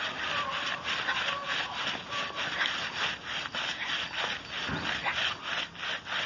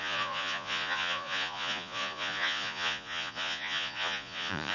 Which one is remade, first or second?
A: second